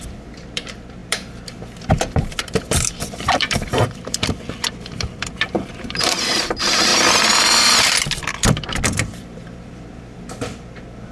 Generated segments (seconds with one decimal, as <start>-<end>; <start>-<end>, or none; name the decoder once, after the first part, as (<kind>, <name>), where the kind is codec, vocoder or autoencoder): 0.0-6.9 (vocoder, BigVGAN v2); 8.2-11.1